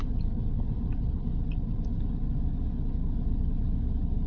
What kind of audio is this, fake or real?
real